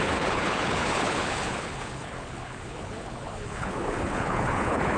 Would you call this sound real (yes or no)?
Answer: no